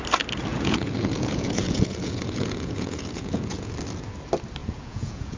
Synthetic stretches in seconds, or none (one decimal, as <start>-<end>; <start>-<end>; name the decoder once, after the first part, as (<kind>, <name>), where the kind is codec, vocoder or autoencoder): 0.5-3.7 (vocoder, Vocos); 4.6-5.4

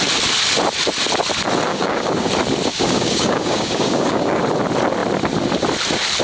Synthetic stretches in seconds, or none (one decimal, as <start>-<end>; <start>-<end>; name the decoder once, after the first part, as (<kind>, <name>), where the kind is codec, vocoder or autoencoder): 1.7-2.3 (codec, DAC); 2.7-4.4

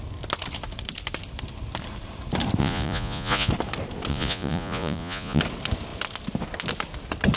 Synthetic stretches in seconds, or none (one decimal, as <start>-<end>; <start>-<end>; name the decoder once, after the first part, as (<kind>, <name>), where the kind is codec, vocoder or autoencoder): 2.6-3.5 (vocoder, Vocos); 4.1-5.4

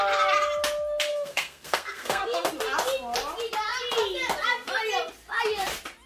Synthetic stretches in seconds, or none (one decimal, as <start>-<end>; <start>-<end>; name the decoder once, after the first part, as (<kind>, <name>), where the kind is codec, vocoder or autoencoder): 1.1-2.5 (codec, SNAC)

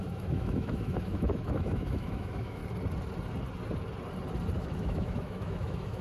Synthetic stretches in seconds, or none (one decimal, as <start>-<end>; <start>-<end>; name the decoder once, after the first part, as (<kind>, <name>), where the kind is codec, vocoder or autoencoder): 0.0-2.6 (autoencoder, DAC-VAE); 4.6-6.0

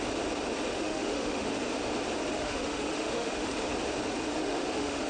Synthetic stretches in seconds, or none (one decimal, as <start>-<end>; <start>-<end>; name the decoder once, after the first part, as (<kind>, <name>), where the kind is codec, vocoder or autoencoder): 0.7-1.5 (autoencoder, DAC-VAE); 2.3-3.5; 4.4-5.1

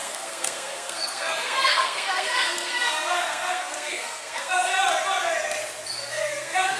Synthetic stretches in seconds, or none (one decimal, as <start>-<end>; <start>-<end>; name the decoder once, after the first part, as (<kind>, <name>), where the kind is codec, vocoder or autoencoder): 0.0-4.7 (codec, SNAC); 6.1-6.8

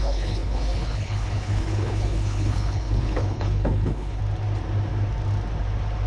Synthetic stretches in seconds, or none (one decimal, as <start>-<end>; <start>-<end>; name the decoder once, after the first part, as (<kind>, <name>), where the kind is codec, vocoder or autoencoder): 0.0-4.2 (codec, HILCodec)